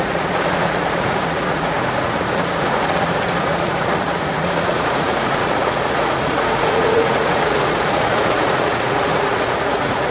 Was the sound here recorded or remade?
remade